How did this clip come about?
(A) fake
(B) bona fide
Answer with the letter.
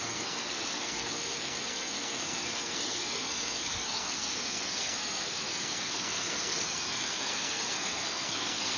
A